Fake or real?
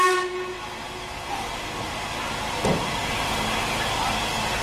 real